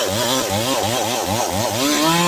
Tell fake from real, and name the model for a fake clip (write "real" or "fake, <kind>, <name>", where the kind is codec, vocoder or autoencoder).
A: real